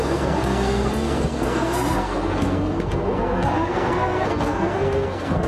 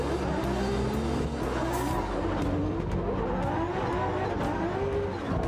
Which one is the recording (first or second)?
second